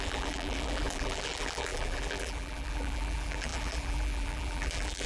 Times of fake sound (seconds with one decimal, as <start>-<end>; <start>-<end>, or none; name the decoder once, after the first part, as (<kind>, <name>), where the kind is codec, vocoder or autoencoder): 0.0-5.1 (vocoder, BigVGAN v2)